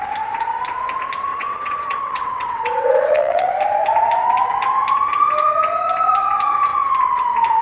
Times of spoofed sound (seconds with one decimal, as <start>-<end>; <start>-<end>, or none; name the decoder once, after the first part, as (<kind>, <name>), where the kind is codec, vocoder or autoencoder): 1.3-3.5 (vocoder, WaveNeXt)